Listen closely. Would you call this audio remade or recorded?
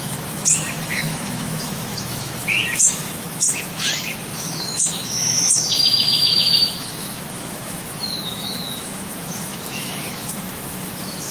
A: remade